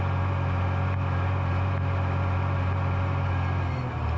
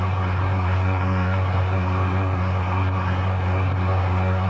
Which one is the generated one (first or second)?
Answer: second